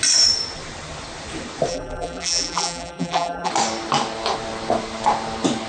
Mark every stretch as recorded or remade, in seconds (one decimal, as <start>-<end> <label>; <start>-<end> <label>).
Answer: 0.0-1.7 recorded; 1.7-3.5 remade; 3.5-5.7 recorded